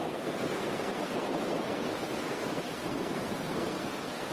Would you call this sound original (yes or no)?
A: no